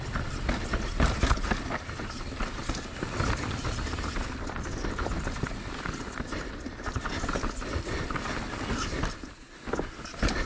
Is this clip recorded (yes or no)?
yes